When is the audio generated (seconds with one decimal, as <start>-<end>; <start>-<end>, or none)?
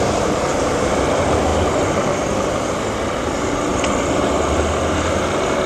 none